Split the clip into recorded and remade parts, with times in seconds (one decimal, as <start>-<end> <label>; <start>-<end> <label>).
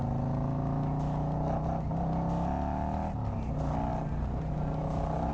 0.0-5.3 recorded